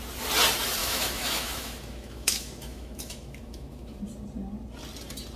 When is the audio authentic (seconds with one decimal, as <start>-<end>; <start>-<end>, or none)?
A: 0.0-0.8; 4.0-5.4